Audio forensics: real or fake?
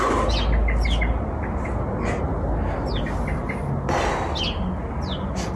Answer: real